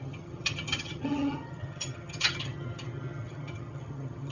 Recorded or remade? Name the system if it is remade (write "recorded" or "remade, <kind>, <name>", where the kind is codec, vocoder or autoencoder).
remade, vocoder, HiFi-GAN